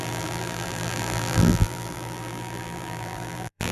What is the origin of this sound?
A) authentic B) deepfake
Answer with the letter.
B